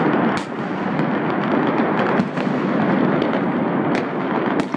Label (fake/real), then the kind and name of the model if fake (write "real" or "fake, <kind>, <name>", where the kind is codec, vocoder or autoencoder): real